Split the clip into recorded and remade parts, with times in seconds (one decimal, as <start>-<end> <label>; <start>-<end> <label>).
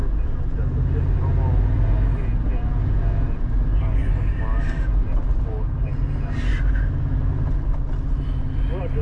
0.0-9.0 recorded